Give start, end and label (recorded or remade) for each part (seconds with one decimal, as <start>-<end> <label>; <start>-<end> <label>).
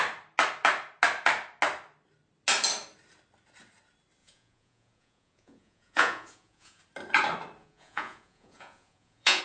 0.0-4.2 recorded; 4.2-6.8 remade; 6.8-7.6 recorded; 7.6-9.4 remade